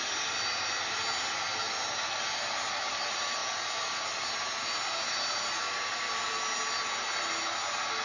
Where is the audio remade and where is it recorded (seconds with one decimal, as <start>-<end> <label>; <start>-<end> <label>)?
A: 0.0-8.0 recorded